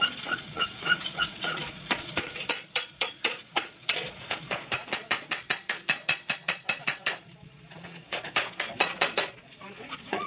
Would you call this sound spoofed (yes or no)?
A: yes